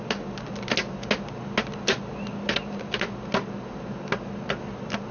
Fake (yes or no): no